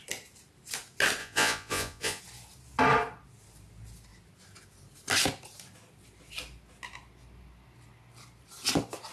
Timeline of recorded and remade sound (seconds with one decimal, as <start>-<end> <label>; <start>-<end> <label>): 0.0-1.2 recorded; 1.2-2.2 remade; 2.2-9.1 recorded